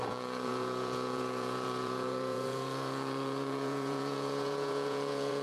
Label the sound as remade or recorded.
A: remade